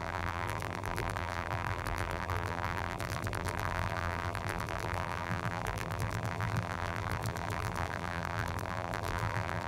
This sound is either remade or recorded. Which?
remade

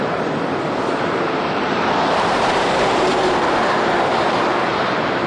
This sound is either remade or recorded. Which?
remade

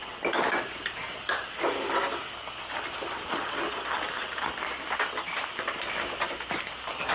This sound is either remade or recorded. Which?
recorded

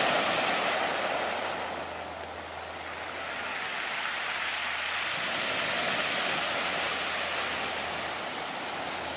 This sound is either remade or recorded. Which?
recorded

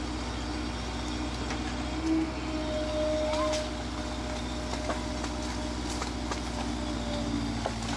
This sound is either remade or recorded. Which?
recorded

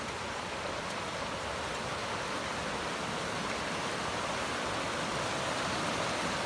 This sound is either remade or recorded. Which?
recorded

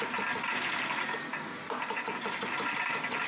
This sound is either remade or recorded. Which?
recorded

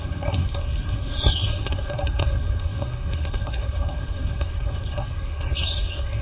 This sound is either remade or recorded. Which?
remade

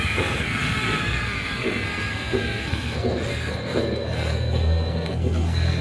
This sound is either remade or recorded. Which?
remade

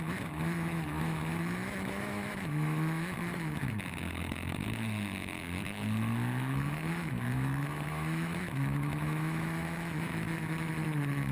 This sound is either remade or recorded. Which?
remade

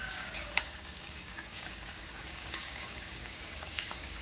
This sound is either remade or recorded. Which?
remade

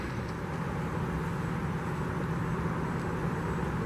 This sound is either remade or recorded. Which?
recorded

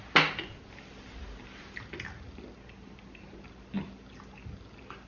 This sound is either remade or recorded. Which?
recorded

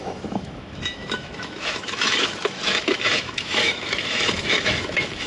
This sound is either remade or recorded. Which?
remade